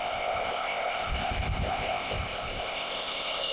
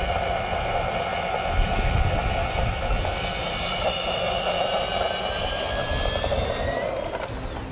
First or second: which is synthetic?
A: first